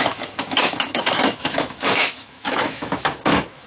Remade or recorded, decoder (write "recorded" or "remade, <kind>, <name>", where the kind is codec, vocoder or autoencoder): remade, autoencoder, DAC-VAE